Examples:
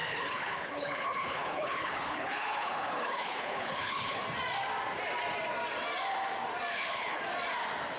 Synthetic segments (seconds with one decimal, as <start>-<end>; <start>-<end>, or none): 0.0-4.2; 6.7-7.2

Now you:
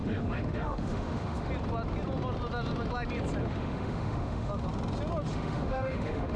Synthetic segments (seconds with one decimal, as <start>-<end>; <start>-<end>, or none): 0.0-1.5; 3.4-4.5; 5.3-6.4

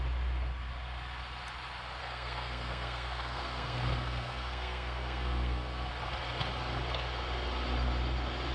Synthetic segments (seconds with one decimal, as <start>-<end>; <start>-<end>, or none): 2.0-5.9

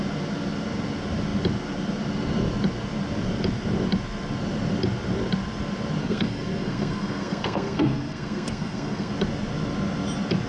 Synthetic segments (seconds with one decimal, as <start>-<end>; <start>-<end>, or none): 6.0-9.1

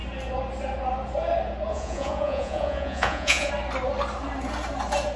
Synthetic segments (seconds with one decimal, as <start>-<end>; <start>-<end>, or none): 1.7-3.5

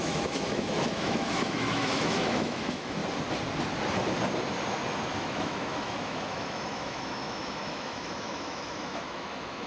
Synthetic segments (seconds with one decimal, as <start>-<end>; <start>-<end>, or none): 0.0-3.0; 5.2-9.7

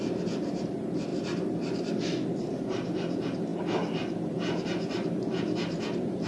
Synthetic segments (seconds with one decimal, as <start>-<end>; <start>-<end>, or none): none

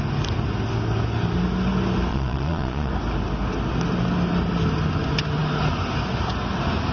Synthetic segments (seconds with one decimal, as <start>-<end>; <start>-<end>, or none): 2.1-2.9